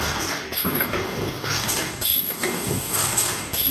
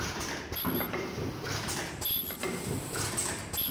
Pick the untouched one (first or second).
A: second